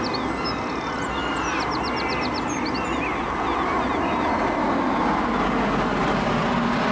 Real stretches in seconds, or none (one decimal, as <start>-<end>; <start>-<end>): 1.2-5.3